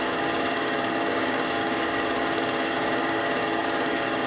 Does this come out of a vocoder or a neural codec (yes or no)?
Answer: yes